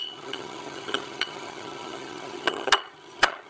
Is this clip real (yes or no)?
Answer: no